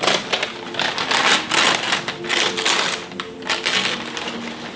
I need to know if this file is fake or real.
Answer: real